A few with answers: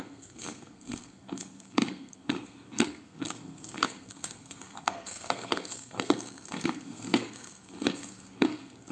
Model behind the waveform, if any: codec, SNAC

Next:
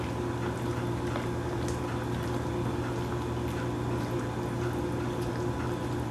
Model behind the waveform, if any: none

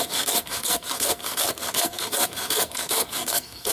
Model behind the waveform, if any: codec, SNAC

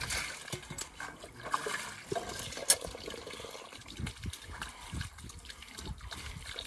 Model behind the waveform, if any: none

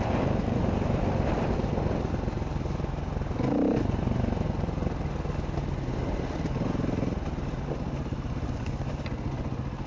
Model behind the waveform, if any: none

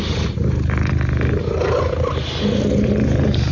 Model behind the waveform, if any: none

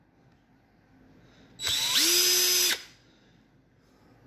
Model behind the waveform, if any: none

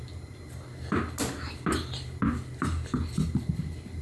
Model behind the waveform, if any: none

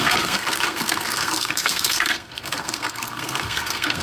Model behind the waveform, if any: codec, SNAC